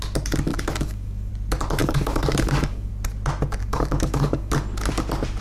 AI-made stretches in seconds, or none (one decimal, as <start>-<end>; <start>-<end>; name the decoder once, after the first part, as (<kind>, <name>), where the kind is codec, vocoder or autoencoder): 0.5-1.3 (codec, DAC); 1.8-2.9; 3.6-4.5